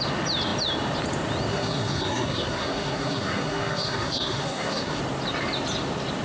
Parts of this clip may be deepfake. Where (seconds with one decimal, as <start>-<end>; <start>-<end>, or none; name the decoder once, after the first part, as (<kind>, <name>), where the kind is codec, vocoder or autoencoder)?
1.5-5.0 (codec, SNAC)